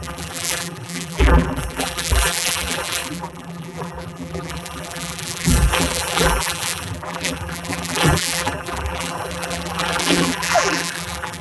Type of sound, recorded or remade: remade